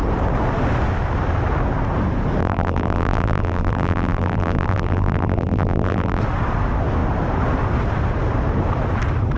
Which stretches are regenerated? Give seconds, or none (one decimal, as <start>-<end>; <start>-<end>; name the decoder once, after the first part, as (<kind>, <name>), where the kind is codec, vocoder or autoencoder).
2.4-6.2 (vocoder, BigVGAN v2)